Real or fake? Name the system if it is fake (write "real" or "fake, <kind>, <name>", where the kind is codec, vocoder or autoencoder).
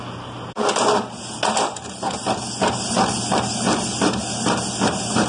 real